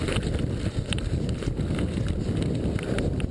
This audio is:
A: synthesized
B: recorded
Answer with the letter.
B